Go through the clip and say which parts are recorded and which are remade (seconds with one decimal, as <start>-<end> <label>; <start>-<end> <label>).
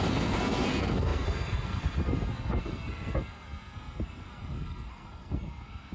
0.0-5.9 remade